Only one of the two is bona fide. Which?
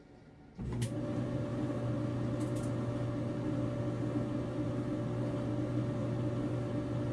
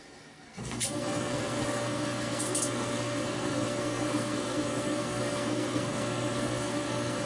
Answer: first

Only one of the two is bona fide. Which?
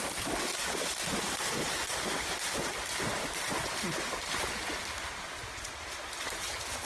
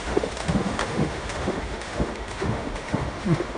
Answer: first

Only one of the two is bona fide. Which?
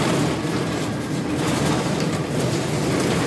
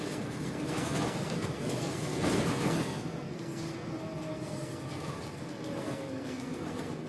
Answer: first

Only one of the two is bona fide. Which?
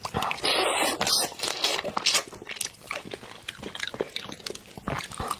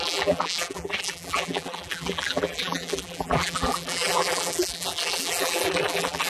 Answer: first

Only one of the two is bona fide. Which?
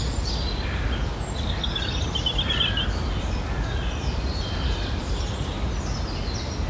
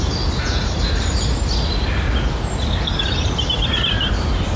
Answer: first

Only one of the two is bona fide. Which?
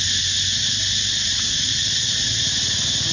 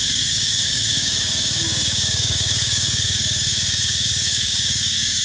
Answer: first